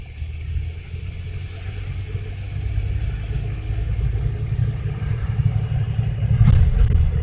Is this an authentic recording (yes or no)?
yes